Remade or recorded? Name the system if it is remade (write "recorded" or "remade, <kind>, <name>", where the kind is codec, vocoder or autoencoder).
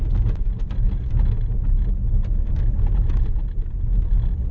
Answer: recorded